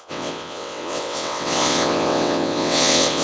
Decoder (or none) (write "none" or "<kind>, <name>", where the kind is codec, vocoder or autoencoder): vocoder, WaveNeXt